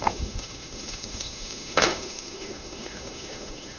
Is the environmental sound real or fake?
fake